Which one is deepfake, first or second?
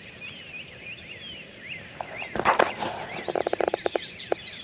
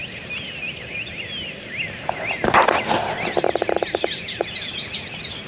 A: first